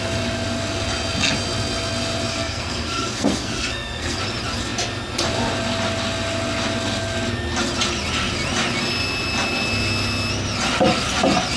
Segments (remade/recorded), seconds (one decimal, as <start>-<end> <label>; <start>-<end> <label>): 0.0-2.3 recorded; 2.3-4.2 remade; 4.2-11.6 recorded

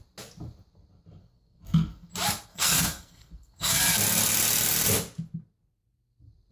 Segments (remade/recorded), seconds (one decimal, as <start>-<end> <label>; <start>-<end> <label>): 0.0-1.2 recorded; 1.2-2.1 remade; 2.1-2.5 recorded; 2.5-3.8 remade; 3.8-6.5 recorded